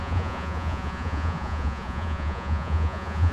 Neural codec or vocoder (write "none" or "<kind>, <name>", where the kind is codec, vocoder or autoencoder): vocoder, Vocos